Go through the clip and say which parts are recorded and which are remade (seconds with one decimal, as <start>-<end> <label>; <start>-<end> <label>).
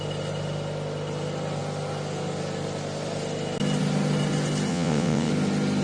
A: 0.0-4.7 recorded; 4.7-5.3 remade; 5.3-5.8 recorded